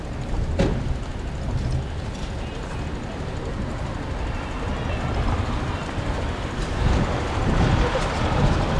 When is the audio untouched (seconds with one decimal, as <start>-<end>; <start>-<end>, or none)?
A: 0.0-8.8